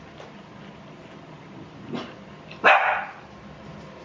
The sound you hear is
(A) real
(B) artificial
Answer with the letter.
A